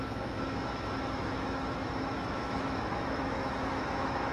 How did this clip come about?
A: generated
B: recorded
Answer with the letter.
A